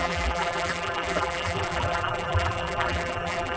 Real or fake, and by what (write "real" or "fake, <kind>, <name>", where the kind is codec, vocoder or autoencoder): fake, vocoder, BigVGAN v2